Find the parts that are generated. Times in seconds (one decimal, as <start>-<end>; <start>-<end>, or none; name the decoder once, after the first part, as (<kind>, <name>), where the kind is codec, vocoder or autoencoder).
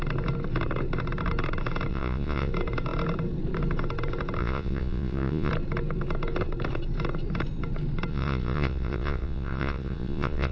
1.9-2.5 (vocoder, Vocos); 4.4-5.5; 8.1-10.5